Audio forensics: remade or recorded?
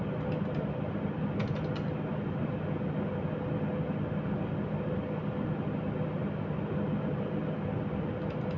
recorded